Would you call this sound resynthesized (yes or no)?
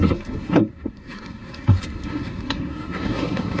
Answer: yes